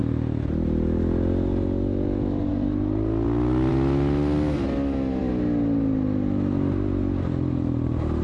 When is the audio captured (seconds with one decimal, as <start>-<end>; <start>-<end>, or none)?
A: 0.0-8.2